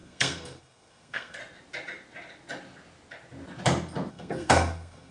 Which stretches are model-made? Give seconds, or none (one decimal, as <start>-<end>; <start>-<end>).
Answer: 0.0-1.4; 4.1-5.1